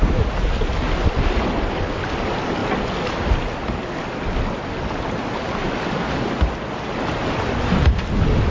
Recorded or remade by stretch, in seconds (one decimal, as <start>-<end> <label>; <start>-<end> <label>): 0.0-8.5 recorded